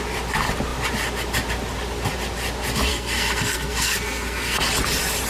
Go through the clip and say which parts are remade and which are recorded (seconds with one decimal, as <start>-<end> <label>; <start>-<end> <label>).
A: 0.0-2.9 recorded; 2.9-4.6 remade; 4.6-5.3 recorded